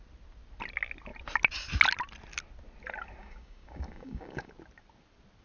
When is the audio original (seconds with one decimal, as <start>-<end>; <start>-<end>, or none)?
0.0-3.2; 4.5-5.4